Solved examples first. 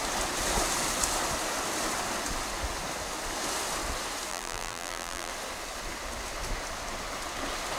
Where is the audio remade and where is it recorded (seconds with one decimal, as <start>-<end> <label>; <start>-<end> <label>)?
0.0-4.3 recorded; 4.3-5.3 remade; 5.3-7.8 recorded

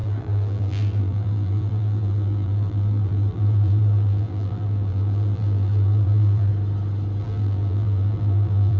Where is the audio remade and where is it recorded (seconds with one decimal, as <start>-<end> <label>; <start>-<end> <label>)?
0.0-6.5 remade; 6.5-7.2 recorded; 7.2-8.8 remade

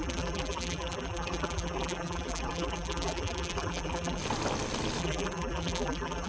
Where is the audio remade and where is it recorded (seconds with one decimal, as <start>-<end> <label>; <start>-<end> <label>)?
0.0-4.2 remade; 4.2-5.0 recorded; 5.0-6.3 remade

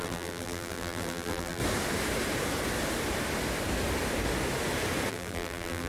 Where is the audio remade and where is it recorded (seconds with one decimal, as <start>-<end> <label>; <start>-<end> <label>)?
0.0-1.6 remade; 1.6-5.1 recorded; 5.1-5.9 remade